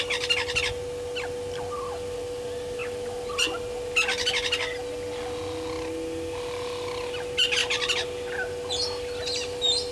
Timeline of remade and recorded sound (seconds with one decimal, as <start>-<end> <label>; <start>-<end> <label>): 0.0-9.9 recorded